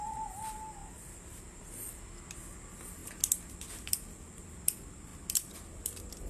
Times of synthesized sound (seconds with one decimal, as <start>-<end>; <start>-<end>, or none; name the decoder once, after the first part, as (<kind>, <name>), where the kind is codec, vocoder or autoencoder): none